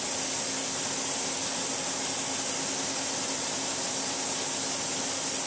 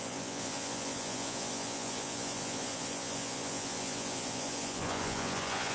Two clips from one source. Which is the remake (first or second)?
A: second